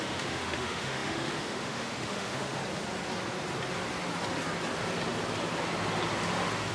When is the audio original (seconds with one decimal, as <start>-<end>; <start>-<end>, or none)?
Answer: 2.6-6.7